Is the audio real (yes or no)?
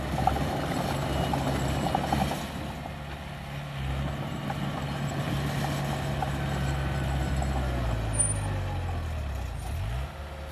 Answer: yes